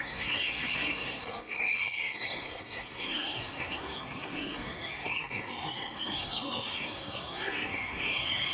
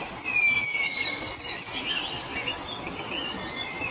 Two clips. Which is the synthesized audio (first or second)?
first